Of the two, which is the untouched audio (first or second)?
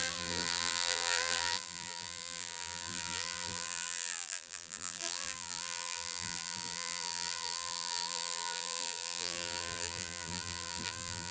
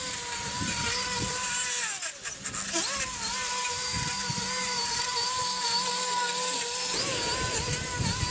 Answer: second